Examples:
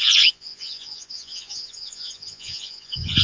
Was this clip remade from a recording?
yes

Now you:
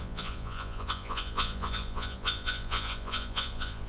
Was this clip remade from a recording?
yes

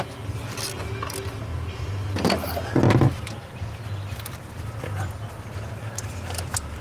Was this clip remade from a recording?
no